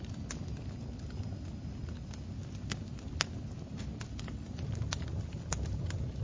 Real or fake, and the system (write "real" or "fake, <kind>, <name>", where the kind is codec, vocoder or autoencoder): real